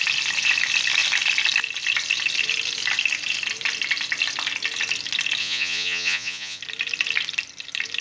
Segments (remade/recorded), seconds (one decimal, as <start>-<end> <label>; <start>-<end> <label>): 0.0-5.4 recorded; 5.4-6.6 remade; 6.6-8.0 recorded